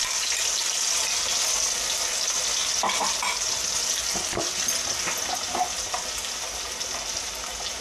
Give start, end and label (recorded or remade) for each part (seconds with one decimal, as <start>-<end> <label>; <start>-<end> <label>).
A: 0.0-7.8 recorded